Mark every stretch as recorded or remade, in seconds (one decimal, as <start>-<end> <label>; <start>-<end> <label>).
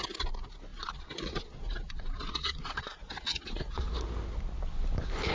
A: 0.0-0.7 recorded; 0.7-3.9 remade; 3.9-5.3 recorded